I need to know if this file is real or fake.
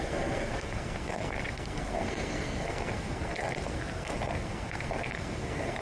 fake